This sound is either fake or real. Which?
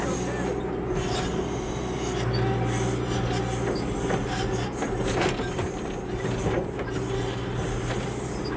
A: real